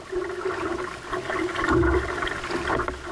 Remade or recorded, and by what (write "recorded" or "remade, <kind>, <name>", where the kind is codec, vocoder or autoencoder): recorded